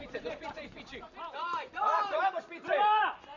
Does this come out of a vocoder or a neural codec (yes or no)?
yes